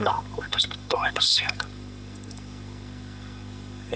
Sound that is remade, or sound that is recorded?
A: remade